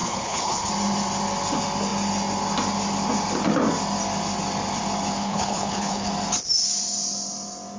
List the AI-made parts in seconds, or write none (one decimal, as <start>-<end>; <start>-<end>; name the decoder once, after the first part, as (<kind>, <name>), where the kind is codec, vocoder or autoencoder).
0.0-0.7 (codec, HILCodec); 5.2-6.1